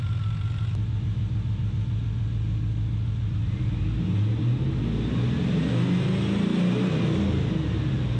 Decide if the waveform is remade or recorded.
recorded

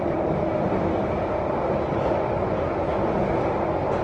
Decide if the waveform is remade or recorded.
recorded